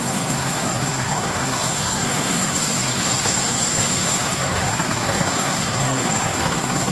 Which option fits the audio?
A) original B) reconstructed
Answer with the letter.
B